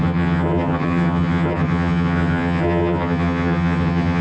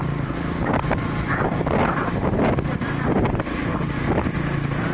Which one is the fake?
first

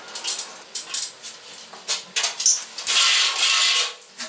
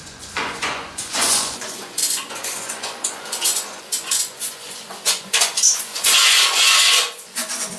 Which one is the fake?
second